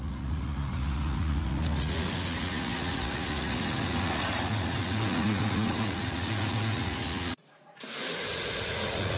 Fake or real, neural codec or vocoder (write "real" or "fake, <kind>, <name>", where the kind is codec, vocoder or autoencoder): fake, vocoder, Vocos